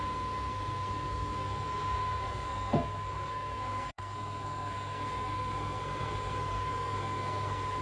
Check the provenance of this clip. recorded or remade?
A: remade